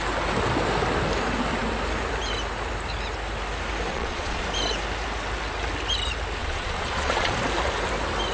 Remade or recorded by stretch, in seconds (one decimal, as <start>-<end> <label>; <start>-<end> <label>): 0.0-3.9 recorded; 3.9-4.4 remade; 4.4-6.4 recorded; 6.4-7.3 remade; 7.3-8.3 recorded